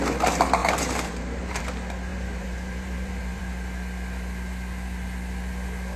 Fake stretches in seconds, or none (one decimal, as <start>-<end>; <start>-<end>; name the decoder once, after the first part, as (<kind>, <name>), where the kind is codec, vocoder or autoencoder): 0.6-1.6 (vocoder, BigVGAN v2); 2.1-3.4